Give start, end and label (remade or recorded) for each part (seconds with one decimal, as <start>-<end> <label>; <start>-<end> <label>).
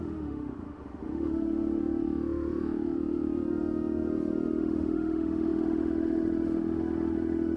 0.0-7.6 remade